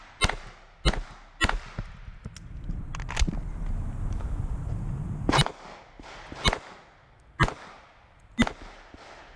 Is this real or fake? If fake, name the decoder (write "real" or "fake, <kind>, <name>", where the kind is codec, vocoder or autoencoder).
real